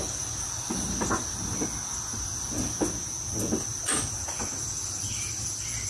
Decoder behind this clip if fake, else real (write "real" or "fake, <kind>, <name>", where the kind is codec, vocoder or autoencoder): real